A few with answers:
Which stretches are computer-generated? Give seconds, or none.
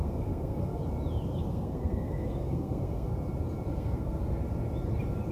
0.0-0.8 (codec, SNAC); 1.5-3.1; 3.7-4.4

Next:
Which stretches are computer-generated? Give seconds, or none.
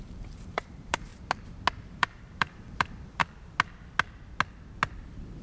0.0-1.1 (vocoder, BigVGAN v2); 1.7-3.2